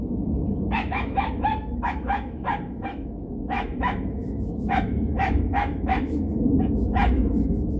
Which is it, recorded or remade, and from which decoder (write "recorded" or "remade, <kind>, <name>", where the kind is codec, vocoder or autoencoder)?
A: remade, autoencoder, DAC-VAE